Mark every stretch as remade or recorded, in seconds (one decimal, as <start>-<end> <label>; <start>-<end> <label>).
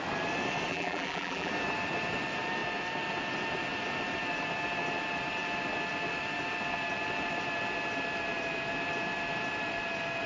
0.0-0.7 recorded; 0.7-1.5 remade; 1.5-10.3 recorded